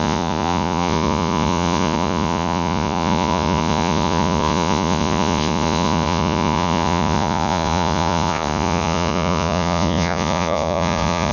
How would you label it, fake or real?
fake